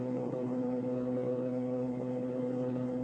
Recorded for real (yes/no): no